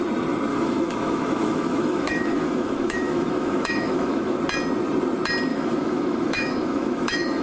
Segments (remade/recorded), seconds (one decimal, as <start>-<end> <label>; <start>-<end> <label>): 0.0-0.5 recorded; 0.5-4.4 remade; 4.4-5.5 recorded; 5.5-7.4 remade